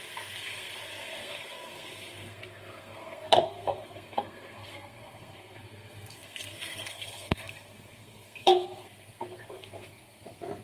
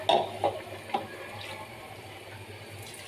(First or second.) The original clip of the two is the second